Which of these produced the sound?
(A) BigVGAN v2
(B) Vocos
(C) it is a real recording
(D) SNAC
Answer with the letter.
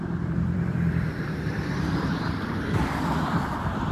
A